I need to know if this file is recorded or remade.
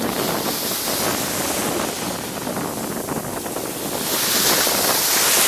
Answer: recorded